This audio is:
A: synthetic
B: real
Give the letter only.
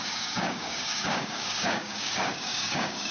A